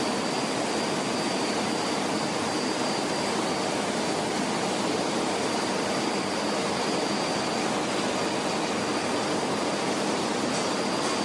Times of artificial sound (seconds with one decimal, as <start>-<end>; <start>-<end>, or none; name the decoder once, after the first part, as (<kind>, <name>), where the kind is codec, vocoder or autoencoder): none